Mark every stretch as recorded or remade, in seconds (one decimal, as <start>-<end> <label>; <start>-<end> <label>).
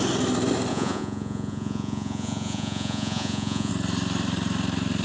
0.0-0.7 recorded; 0.7-3.7 remade; 3.7-5.0 recorded